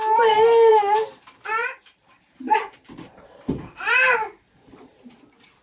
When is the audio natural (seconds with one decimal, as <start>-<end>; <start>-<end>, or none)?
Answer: 0.0-0.7; 1.2-1.6; 5.0-5.6